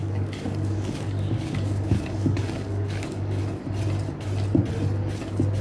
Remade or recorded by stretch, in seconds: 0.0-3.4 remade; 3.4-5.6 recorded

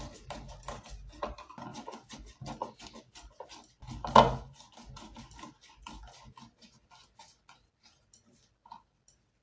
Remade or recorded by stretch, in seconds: 0.0-9.4 recorded

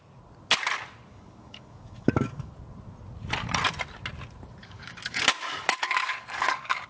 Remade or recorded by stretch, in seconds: 0.0-1.1 recorded; 1.1-2.5 remade; 2.5-4.6 recorded; 4.6-6.9 remade

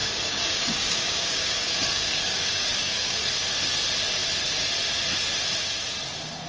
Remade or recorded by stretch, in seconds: 0.0-3.3 remade; 3.3-6.5 recorded

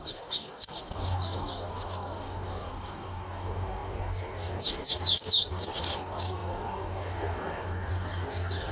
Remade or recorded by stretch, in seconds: 0.0-8.7 remade